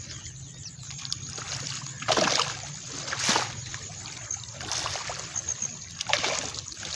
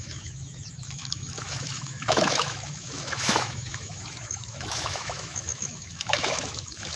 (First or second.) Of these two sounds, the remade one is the second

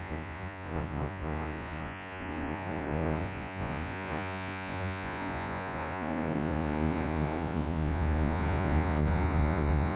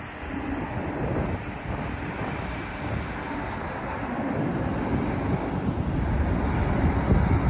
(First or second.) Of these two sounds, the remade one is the first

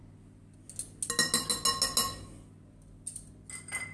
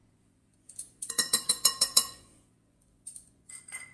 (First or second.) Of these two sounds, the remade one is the second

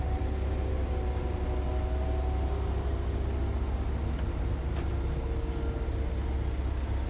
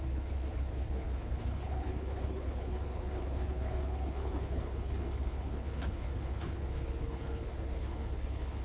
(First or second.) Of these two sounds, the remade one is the second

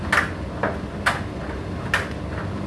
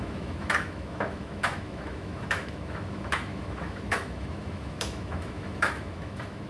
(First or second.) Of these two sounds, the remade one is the second